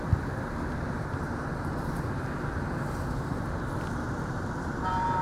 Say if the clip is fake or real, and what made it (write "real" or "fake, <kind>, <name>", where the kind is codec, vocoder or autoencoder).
fake, vocoder, BigVGAN v2